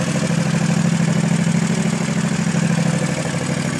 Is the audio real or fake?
real